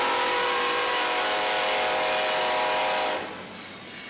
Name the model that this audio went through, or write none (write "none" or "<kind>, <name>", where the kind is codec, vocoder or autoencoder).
none